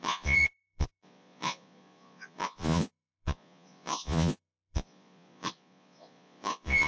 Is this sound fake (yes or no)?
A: yes